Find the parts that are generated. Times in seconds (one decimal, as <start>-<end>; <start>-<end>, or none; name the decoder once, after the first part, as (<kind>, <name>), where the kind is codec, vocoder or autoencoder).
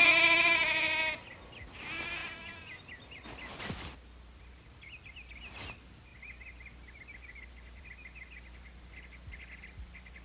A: none